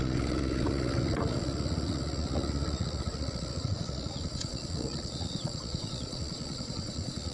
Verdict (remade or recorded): remade